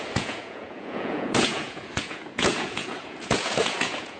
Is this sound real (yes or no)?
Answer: no